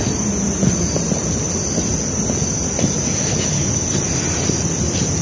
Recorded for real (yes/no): yes